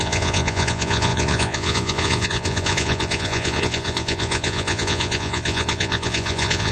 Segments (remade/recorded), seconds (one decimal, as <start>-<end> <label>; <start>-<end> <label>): 0.0-6.7 remade